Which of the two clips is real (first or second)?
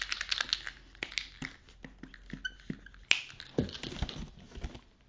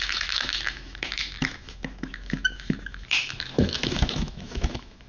first